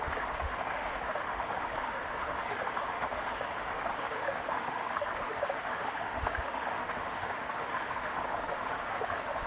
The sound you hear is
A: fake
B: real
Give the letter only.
A